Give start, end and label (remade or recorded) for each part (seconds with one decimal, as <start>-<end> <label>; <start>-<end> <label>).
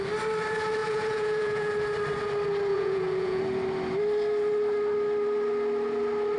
0.0-0.8 recorded; 0.8-1.7 remade; 1.7-2.7 recorded; 2.7-3.4 remade; 3.4-6.4 recorded